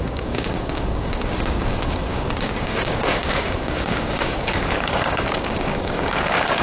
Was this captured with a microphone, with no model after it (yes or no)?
no